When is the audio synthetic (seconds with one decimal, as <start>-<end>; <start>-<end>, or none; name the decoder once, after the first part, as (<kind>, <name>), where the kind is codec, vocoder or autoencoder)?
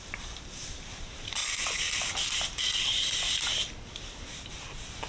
0.0-1.4 (vocoder, BigVGAN v2); 4.5-5.1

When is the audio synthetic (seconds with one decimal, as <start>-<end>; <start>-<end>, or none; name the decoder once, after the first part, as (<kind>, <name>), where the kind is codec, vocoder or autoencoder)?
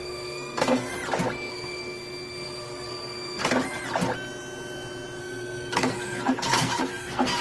0.0-0.9 (codec, SNAC); 1.5-3.4; 5.2-7.4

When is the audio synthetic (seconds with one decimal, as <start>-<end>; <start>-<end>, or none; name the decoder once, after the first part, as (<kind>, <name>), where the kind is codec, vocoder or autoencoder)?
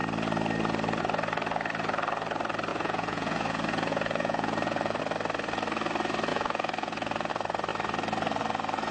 2.7-5.0 (vocoder, Vocos); 6.3-7.3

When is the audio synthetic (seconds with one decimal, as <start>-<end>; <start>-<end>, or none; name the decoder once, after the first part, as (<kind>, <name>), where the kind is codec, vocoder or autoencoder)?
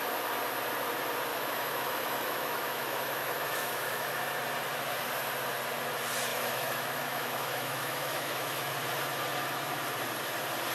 1.3-4.1 (autoencoder, DAC-VAE); 6.3-8.7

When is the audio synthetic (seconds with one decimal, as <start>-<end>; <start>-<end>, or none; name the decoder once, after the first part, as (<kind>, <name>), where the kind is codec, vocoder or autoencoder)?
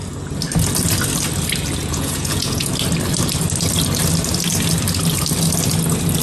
1.8-2.7 (vocoder, Vocos)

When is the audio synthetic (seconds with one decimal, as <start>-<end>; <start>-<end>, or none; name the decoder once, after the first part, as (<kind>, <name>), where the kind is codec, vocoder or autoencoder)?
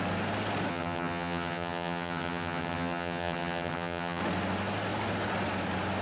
0.7-4.2 (vocoder, HiFi-GAN)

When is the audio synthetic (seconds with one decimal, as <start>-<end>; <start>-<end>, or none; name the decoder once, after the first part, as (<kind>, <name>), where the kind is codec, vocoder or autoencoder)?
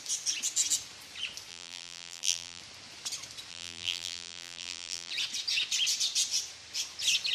1.5-2.6 (vocoder, BigVGAN v2); 3.5-5.1